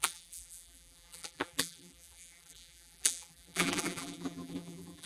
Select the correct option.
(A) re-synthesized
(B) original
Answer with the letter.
A